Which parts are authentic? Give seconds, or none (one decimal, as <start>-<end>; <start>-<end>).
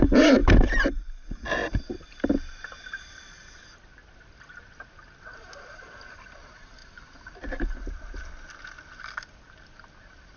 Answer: 0.0-0.4; 1.0-10.4